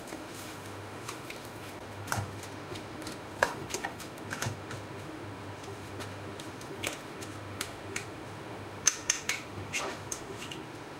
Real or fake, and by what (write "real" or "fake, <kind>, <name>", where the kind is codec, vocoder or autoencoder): fake, autoencoder, DAC-VAE